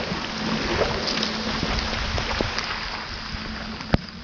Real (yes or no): yes